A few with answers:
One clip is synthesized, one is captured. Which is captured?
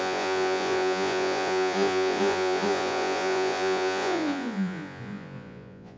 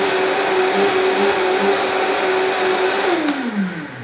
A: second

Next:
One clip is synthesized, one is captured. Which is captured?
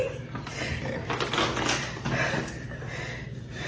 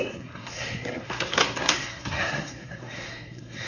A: first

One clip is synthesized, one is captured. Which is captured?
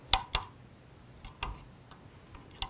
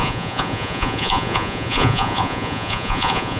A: first